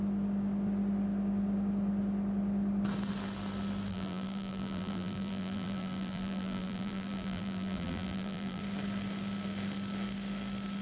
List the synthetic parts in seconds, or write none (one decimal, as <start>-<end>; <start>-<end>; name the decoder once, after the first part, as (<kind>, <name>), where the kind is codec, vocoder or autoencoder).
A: 3.9-8.6 (vocoder, BigVGAN v2)